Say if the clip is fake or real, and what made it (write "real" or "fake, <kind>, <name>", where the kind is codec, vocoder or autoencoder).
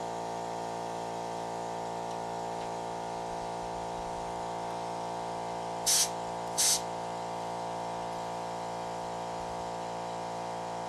real